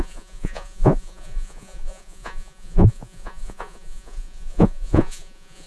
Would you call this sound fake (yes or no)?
yes